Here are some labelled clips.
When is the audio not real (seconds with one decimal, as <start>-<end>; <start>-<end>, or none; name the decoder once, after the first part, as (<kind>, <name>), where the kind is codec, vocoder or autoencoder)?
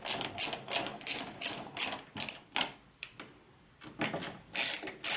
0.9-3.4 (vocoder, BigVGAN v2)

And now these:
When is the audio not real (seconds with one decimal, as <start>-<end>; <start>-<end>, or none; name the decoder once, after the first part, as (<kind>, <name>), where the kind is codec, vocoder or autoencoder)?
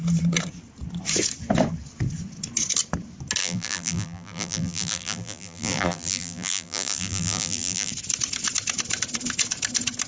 3.4-7.9 (vocoder, BigVGAN v2)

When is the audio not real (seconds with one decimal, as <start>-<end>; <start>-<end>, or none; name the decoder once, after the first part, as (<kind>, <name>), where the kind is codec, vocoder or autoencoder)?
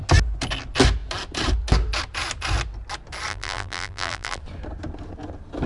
3.3-4.4 (vocoder, BigVGAN v2)